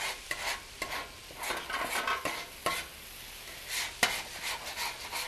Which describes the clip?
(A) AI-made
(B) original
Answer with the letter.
B